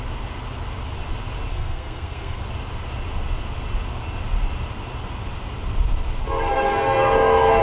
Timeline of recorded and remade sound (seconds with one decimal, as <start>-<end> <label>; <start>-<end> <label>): 0.0-1.5 recorded; 1.5-2.4 remade; 2.4-6.5 recorded; 6.5-7.6 remade